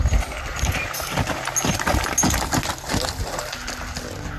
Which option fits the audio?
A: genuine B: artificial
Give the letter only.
A